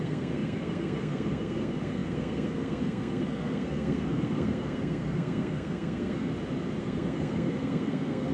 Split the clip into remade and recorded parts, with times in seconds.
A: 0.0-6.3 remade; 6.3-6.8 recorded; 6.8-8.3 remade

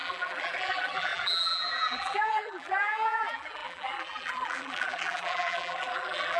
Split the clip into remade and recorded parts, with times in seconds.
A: 0.0-6.4 remade

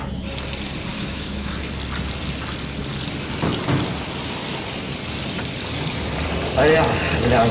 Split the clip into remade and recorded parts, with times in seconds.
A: 0.0-0.9 recorded; 0.9-1.5 remade; 1.5-7.5 recorded

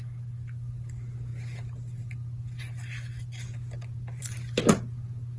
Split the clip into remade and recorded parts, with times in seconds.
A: 0.0-5.4 recorded